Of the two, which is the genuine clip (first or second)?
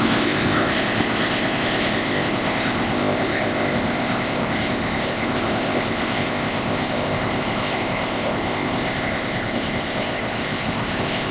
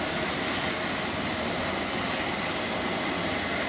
second